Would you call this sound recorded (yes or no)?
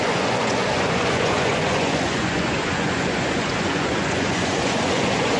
no